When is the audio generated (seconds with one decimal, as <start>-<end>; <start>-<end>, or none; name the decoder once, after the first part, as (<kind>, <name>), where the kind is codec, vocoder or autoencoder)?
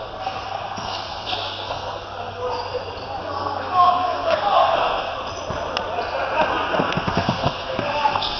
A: 0.0-2.4 (codec, SNAC); 3.2-5.2; 6.8-8.4